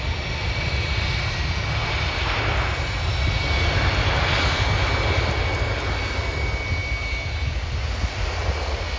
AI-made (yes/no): no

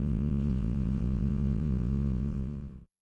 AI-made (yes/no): yes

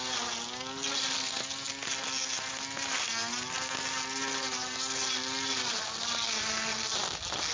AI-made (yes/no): no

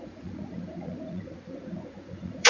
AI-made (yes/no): yes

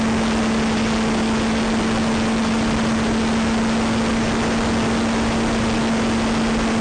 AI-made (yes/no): no